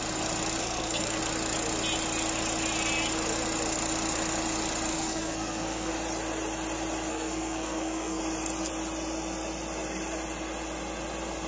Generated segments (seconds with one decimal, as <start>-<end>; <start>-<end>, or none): 0.6-1.2; 4.9-5.9; 7.1-8.2